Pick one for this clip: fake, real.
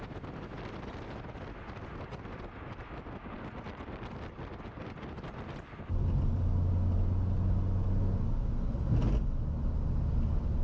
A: real